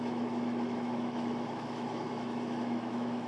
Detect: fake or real fake